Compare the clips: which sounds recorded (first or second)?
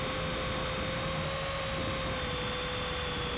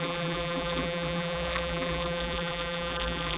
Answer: first